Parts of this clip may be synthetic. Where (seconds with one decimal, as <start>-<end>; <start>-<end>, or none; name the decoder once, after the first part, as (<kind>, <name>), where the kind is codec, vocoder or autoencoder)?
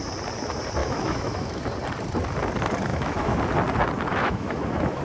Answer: 0.8-1.6 (autoencoder, DAC-VAE); 2.9-3.4; 4.1-5.0